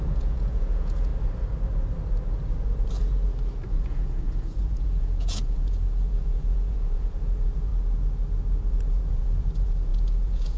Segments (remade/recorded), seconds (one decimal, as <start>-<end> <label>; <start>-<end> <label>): 0.0-1.1 remade; 1.1-3.7 recorded; 3.7-7.7 remade; 7.7-8.7 recorded; 8.7-10.6 remade